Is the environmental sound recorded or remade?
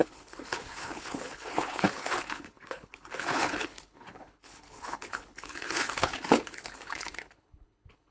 remade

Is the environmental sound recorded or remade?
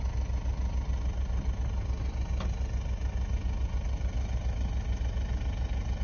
recorded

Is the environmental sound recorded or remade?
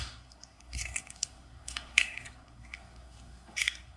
remade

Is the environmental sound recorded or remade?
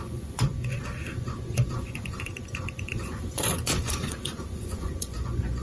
remade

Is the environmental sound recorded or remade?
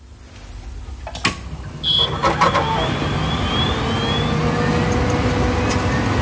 recorded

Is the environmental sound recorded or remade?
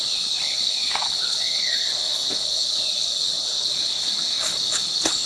remade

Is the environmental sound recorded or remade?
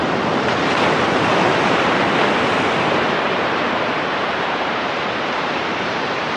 remade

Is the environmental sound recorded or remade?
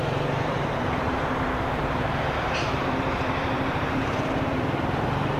remade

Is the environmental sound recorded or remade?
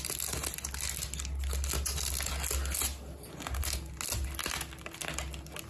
recorded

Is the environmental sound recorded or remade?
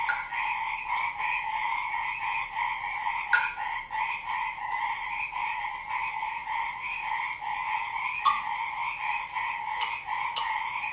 recorded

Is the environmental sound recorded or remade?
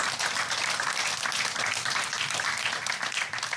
recorded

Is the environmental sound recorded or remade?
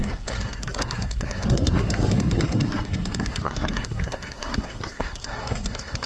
remade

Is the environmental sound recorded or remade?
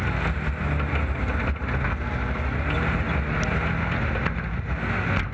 recorded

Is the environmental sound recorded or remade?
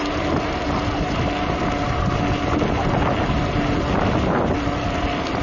recorded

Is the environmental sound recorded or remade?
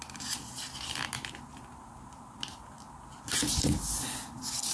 recorded